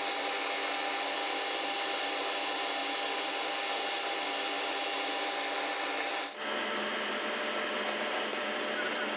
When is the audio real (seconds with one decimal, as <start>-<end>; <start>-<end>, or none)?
0.0-9.2